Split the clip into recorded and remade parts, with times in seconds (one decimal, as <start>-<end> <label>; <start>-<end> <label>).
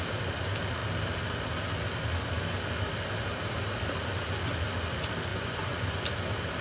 0.0-5.3 recorded; 5.3-6.0 remade; 6.0-6.6 recorded